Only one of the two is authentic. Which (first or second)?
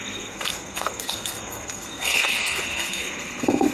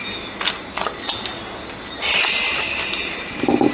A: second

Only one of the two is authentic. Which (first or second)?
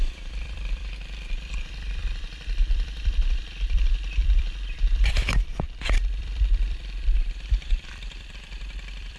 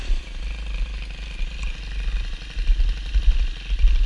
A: second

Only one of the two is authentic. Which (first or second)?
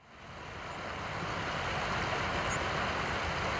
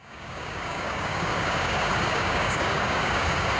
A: first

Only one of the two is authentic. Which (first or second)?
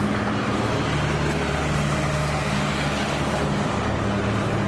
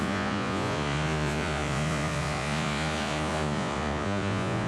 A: first